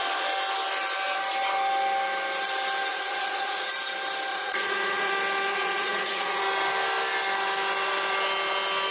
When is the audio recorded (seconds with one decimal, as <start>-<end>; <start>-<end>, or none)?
0.0-2.9; 3.7-4.3; 5.1-5.5; 6.4-8.9